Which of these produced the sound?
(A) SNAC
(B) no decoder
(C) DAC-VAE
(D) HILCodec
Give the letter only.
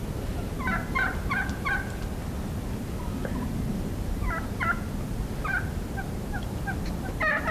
B